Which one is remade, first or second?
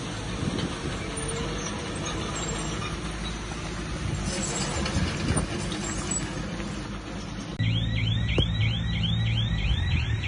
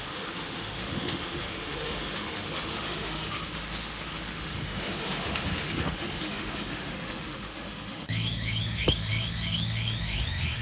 second